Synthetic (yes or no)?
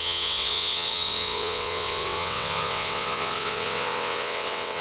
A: yes